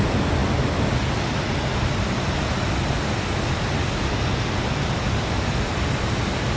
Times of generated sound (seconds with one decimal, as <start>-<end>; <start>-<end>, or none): none